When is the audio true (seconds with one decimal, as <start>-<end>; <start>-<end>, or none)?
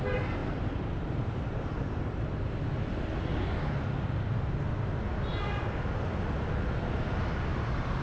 0.0-8.0